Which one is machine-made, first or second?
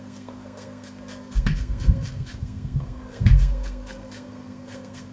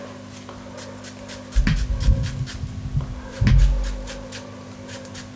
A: first